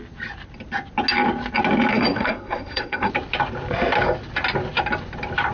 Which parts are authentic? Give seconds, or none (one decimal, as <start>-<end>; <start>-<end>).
0.0-1.9; 3.1-5.5